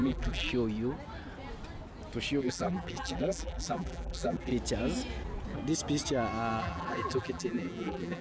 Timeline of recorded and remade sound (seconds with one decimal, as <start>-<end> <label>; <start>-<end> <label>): 0.0-0.5 remade; 0.5-2.4 recorded; 2.4-4.5 remade; 4.5-6.6 recorded; 6.6-8.2 remade